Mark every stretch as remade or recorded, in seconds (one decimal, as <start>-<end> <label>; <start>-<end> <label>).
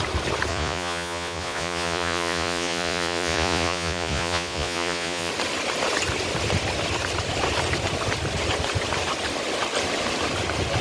0.0-0.5 recorded; 0.5-5.3 remade; 5.3-10.8 recorded